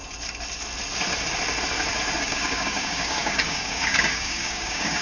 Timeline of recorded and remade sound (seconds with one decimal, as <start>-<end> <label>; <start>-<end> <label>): 0.0-2.2 recorded; 2.2-5.0 remade